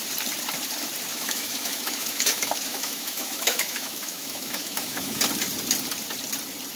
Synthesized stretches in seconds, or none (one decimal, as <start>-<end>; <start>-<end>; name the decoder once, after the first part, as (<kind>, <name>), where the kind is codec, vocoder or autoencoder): 1.1-5.2 (autoencoder, DAC-VAE)